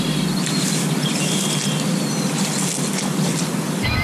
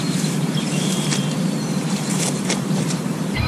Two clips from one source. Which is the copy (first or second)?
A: second